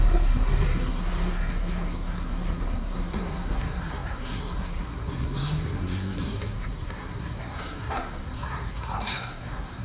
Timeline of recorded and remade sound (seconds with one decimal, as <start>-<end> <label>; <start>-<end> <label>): 0.0-9.8 remade